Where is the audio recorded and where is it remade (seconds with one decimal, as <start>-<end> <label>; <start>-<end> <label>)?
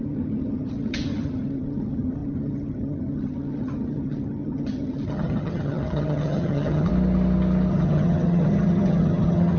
0.0-6.9 remade; 6.9-7.7 recorded; 7.7-9.6 remade